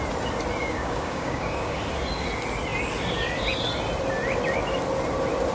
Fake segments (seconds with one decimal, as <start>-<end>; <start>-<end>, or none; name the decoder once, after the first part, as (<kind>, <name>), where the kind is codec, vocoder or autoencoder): 0.6-1.8 (codec, DAC)